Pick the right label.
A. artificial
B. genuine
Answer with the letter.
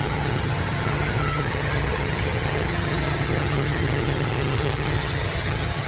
A